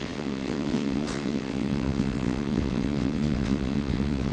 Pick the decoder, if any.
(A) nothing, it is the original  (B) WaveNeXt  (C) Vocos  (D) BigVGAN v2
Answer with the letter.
B